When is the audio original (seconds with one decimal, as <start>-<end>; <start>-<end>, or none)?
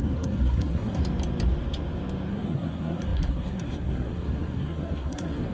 1.0-2.3